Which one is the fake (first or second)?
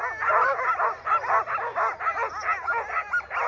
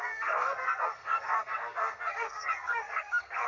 second